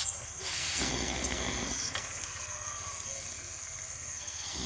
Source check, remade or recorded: remade